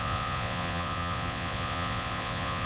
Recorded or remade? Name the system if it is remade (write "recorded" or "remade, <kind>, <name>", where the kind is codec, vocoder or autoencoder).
remade, vocoder, Vocos